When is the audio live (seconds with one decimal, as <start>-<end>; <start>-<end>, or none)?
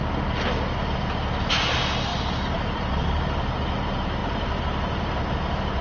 0.0-2.1; 3.2-4.2; 5.2-5.8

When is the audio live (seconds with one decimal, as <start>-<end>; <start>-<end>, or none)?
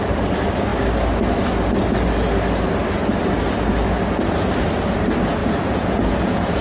0.0-5.4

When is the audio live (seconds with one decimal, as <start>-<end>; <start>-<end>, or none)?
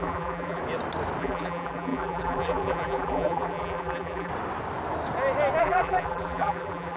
0.6-1.2; 4.3-5.6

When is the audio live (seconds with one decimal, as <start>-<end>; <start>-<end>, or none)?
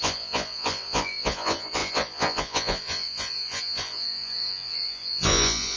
none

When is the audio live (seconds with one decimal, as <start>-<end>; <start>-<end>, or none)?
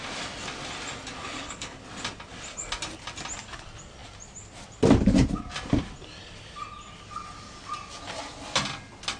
0.0-1.2; 1.8-9.2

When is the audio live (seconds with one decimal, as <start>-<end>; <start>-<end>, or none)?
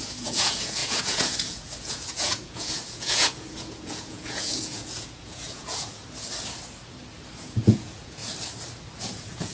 6.0-7.4; 8.2-9.0